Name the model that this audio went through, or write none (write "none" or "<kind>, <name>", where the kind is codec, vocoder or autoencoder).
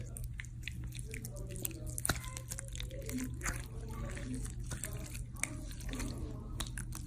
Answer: none